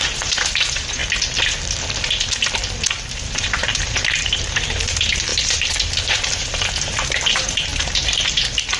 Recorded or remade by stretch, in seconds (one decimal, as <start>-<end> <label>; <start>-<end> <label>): 0.0-1.0 remade; 1.0-3.1 recorded; 3.1-8.8 remade